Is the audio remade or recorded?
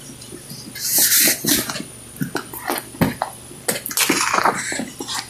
recorded